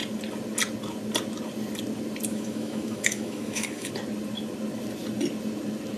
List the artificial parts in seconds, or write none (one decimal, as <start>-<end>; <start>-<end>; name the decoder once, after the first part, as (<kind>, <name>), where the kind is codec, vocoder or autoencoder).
2.3-3.9 (autoencoder, DAC-VAE)